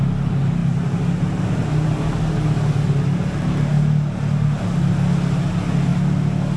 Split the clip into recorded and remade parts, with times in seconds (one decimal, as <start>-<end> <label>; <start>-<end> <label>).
0.0-6.6 recorded